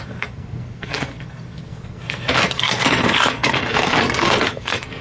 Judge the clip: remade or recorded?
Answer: remade